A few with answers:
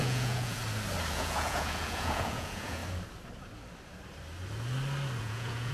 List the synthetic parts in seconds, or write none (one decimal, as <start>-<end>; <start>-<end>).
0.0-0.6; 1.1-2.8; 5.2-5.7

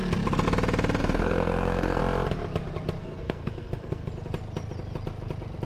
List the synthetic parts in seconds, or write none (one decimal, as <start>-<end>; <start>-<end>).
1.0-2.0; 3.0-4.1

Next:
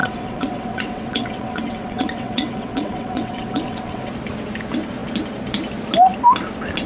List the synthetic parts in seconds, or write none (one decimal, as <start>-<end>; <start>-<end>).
0.0-4.1

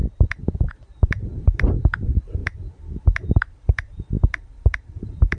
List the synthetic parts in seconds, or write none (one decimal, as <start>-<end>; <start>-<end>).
0.7-1.3; 2.0-2.4; 3.4-5.4

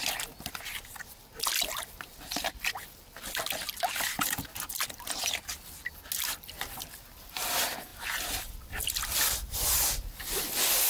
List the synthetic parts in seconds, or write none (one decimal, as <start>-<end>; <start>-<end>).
none

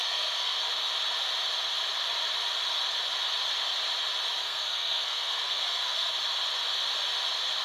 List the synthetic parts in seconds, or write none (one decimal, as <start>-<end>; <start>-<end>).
0.0-0.6; 4.4-6.1